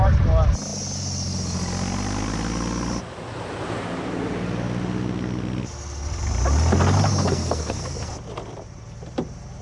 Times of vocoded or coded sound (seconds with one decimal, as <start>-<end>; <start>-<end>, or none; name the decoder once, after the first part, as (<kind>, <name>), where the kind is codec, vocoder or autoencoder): 7.1-8.1 (codec, SNAC)